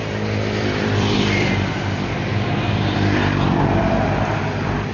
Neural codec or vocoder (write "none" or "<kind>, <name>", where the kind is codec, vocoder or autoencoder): vocoder, BigVGAN v2